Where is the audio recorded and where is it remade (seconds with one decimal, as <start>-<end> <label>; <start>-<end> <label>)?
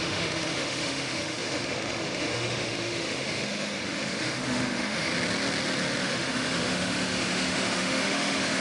0.0-5.1 remade; 5.1-6.0 recorded; 6.0-8.6 remade